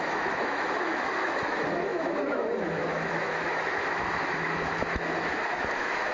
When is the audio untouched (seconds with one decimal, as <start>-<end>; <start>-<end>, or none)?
none